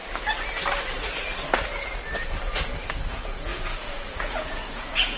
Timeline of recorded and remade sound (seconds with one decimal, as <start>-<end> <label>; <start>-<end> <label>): 0.0-3.1 recorded; 3.1-5.2 remade